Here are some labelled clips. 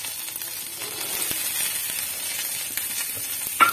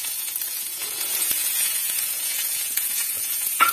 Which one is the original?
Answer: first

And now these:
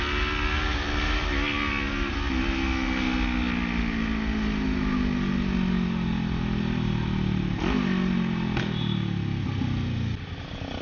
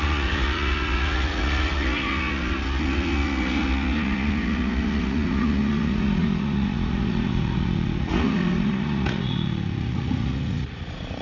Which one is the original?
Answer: first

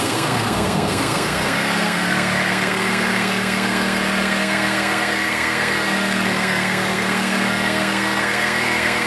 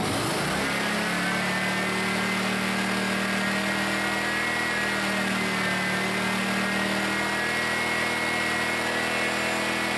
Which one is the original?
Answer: second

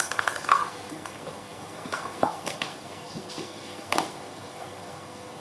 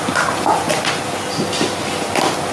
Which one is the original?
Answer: second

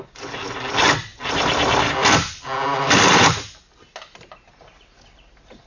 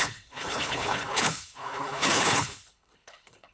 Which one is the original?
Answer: first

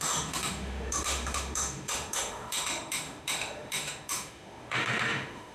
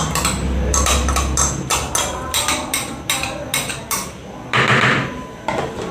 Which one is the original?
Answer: second